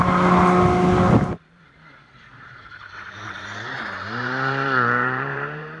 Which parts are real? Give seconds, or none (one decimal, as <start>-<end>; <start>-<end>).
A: 0.0-2.3